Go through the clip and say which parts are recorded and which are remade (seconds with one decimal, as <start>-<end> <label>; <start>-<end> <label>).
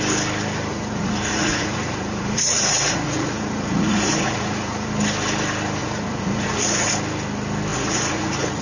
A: 0.0-0.7 recorded; 0.7-4.9 remade; 4.9-5.8 recorded; 5.8-6.9 remade; 6.9-7.7 recorded; 7.7-8.6 remade